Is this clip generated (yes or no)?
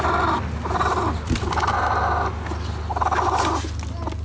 no